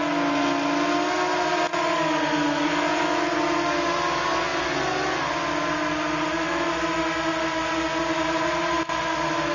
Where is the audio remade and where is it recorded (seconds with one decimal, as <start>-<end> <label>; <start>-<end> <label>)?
0.0-9.5 recorded